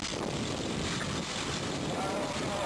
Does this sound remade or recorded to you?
recorded